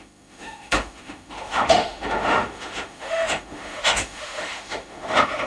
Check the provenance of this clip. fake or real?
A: fake